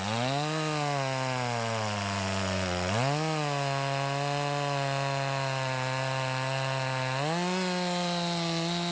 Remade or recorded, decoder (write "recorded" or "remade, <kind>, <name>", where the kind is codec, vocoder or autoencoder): recorded